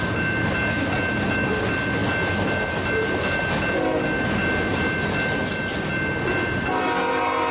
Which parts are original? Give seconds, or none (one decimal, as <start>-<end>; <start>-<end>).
0.0-7.5